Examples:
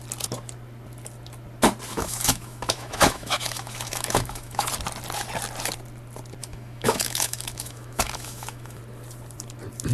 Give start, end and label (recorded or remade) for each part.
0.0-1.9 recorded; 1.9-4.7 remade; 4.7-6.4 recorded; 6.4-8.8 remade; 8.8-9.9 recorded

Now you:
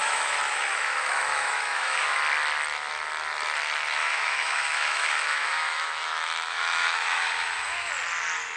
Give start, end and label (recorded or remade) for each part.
0.0-2.2 remade; 2.2-4.0 recorded; 4.0-7.9 remade; 7.9-8.6 recorded

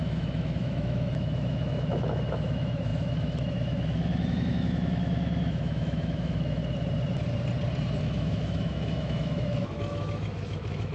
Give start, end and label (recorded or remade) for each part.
0.0-6.6 remade; 6.6-8.0 recorded; 8.0-10.9 remade

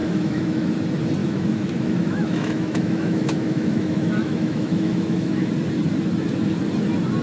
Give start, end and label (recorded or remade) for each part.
0.0-0.7 remade; 0.7-1.2 recorded; 1.2-5.5 remade; 5.5-7.2 recorded

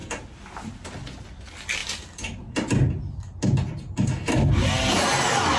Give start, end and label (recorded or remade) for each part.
0.0-5.6 recorded

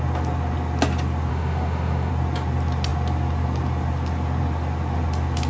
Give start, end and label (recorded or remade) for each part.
0.0-1.3 recorded; 1.3-2.1 remade; 2.1-5.5 recorded

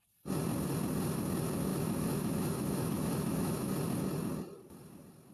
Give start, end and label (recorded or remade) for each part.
0.0-1.7 recorded; 1.7-3.7 remade; 3.7-5.3 recorded